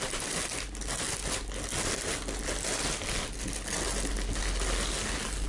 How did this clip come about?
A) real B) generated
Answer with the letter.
A